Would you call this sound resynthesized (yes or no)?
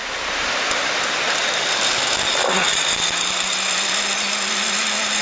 no